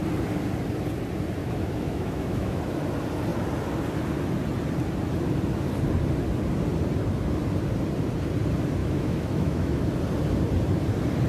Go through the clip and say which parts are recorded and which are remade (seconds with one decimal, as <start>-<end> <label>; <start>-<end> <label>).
0.0-1.4 recorded; 1.4-2.6 remade; 2.6-8.8 recorded; 8.8-9.8 remade; 9.8-11.3 recorded

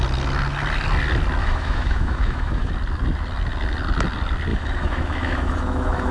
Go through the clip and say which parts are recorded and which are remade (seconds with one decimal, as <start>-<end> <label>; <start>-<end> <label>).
0.0-1.4 recorded; 1.4-2.7 remade; 2.7-4.5 recorded; 4.5-6.1 remade

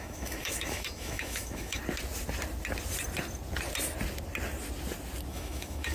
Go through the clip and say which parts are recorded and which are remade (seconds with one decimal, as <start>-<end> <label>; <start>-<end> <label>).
0.0-1.8 remade; 1.8-5.3 recorded; 5.3-5.9 remade

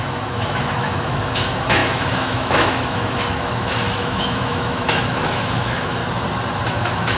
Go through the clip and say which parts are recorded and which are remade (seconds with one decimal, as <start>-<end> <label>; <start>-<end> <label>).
0.0-6.0 remade; 6.0-6.7 recorded; 6.7-7.2 remade

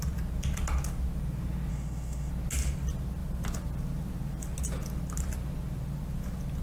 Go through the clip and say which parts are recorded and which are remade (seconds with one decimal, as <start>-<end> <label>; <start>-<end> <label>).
0.0-1.7 recorded; 1.7-2.3 remade; 2.3-6.6 recorded

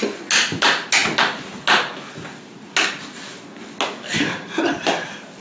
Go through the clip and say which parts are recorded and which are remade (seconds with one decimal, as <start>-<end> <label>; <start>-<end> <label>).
0.0-5.4 recorded

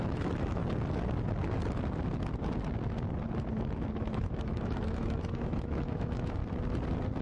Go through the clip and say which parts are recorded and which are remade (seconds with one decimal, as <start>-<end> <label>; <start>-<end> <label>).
0.0-0.6 remade; 0.6-3.9 recorded; 3.9-6.4 remade; 6.4-7.2 recorded